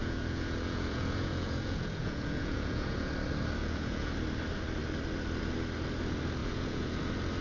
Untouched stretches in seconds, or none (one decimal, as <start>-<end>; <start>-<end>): 3.1-3.6; 4.1-6.4; 7.0-7.4